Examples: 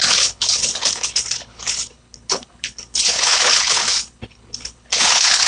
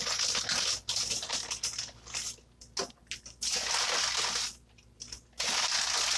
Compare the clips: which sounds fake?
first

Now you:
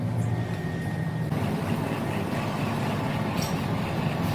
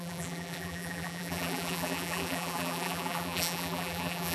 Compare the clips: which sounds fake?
second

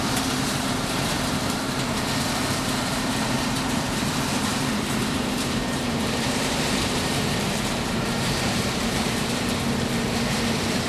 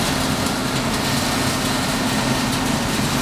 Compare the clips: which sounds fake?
first